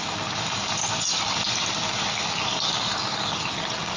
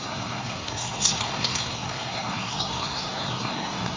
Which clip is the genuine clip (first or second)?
first